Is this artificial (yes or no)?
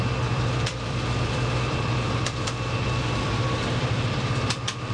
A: yes